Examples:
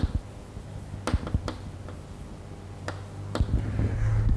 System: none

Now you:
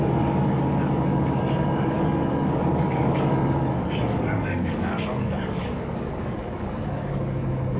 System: codec, DAC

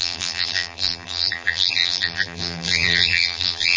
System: vocoder, BigVGAN v2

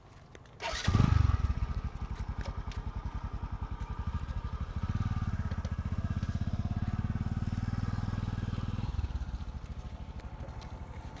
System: none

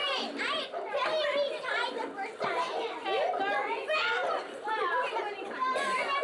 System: none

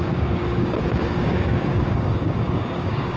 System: codec, DAC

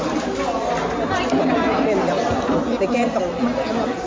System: none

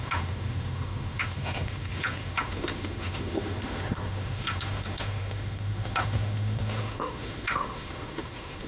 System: autoencoder, DAC-VAE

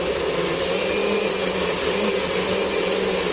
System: none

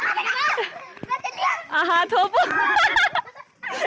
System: none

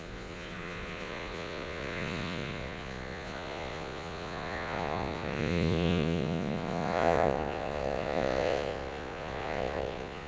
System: vocoder, Vocos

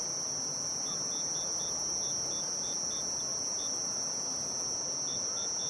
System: vocoder, BigVGAN v2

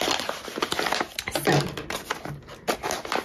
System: none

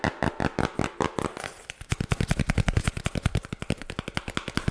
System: none